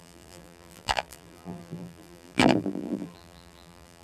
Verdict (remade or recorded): remade